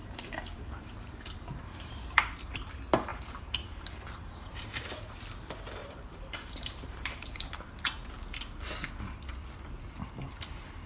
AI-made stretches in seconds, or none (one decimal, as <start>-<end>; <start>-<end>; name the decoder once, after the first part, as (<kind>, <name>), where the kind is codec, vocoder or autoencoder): 0.0-2.7 (vocoder, BigVGAN v2); 3.1-4.8; 5.8-7.7